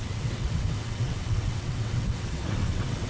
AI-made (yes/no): yes